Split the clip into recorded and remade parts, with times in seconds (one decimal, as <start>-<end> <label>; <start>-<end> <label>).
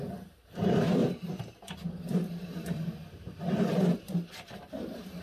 0.0-5.2 remade